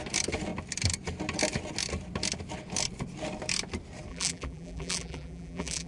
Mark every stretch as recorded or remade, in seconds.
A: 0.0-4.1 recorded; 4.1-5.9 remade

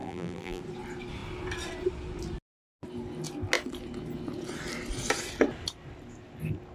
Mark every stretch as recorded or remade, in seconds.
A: 0.0-0.6 remade; 0.6-6.7 recorded

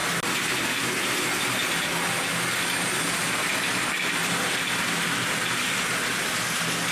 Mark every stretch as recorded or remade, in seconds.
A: 0.0-6.9 recorded

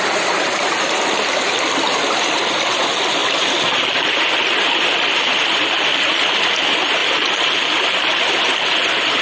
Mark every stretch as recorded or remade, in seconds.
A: 0.0-9.2 recorded